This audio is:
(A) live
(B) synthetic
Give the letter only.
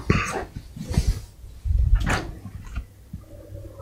A